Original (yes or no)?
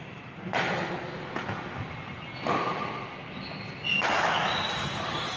yes